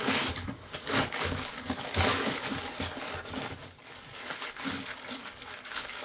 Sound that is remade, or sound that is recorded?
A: remade